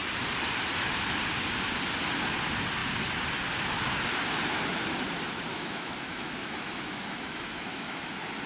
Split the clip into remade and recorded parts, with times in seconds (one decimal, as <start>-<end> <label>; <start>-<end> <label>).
0.0-5.5 recorded; 5.5-8.1 remade; 8.1-8.5 recorded